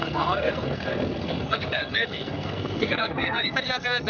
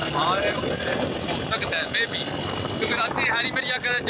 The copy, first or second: first